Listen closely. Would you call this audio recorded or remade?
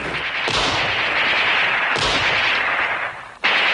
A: recorded